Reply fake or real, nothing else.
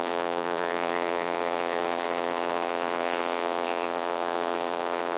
fake